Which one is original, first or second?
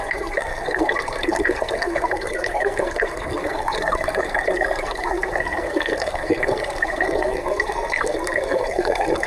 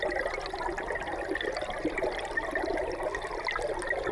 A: second